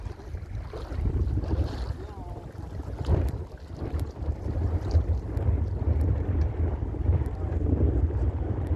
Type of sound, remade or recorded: recorded